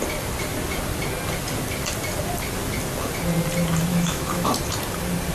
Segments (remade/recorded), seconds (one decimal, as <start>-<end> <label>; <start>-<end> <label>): 0.0-3.9 recorded; 3.9-4.5 remade; 4.5-5.3 recorded